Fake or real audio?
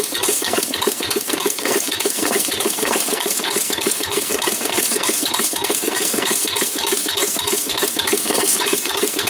fake